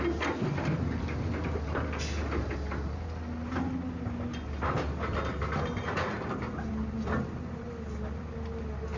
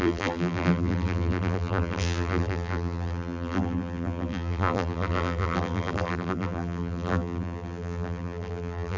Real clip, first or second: first